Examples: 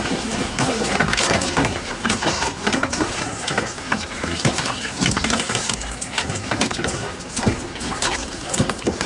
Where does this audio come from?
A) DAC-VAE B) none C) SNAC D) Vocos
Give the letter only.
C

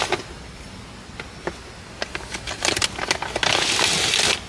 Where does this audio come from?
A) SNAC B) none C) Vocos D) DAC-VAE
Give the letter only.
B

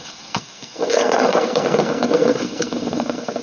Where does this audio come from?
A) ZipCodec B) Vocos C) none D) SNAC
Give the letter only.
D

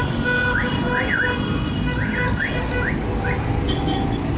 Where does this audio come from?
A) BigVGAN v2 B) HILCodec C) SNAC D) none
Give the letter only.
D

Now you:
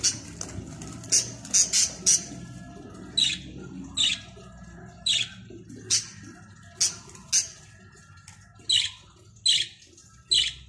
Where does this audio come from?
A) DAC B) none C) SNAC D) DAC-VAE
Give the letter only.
B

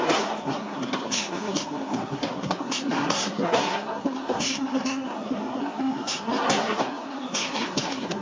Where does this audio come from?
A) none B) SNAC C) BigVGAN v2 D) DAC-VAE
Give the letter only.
B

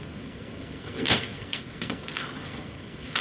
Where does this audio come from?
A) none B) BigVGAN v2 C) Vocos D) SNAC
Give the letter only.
D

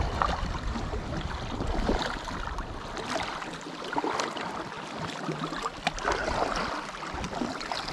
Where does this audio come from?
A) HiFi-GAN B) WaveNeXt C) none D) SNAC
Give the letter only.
C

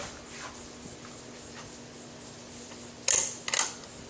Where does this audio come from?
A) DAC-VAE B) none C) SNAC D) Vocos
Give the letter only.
B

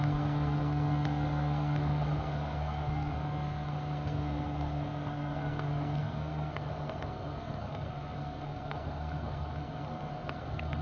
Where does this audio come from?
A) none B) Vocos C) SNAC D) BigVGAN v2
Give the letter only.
C